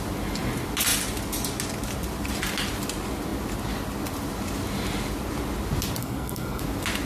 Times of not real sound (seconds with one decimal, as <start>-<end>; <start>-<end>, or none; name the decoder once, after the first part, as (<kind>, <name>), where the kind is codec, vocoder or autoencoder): 6.0-6.6 (codec, SNAC)